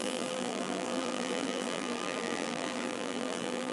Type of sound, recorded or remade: remade